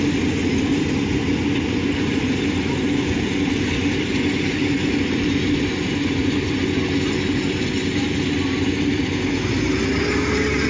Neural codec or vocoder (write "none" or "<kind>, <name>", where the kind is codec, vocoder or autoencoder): none